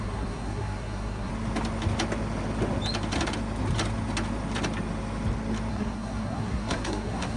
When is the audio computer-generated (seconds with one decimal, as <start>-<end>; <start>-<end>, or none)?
0.0-1.3; 5.7-7.4